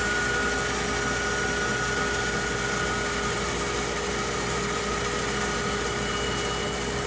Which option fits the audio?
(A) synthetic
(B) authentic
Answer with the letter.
B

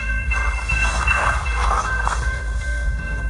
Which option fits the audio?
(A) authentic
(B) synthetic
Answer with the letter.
B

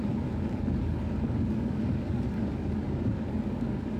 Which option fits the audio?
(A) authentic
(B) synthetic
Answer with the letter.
B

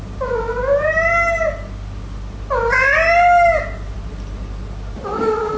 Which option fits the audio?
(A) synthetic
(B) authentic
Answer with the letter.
B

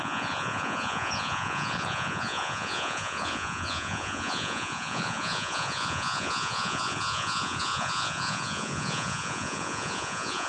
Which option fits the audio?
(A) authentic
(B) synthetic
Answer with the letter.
B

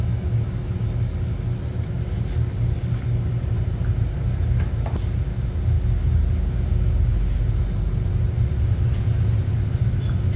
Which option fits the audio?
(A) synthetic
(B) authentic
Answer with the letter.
B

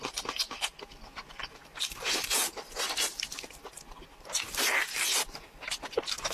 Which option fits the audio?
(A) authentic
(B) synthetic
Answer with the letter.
A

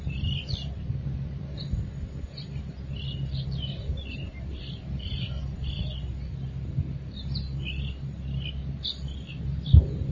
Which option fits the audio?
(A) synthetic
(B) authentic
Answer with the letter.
B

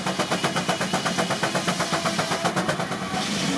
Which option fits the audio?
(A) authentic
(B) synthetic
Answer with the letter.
A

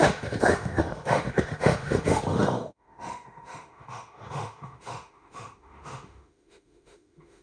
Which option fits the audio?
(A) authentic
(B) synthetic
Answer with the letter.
B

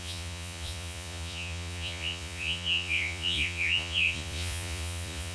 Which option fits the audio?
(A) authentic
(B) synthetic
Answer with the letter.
B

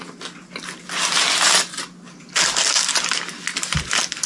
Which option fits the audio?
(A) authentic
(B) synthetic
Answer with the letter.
A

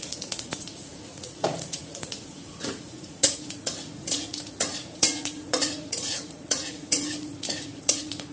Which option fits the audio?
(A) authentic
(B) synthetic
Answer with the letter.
B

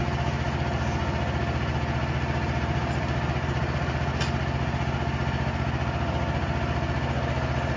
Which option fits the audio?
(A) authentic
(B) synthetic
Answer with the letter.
A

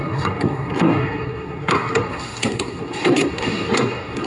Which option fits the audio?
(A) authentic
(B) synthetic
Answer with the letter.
B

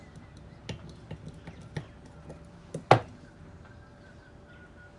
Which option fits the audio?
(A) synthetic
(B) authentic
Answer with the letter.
B